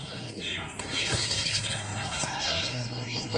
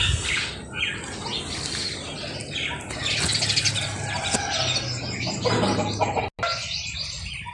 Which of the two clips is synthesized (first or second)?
first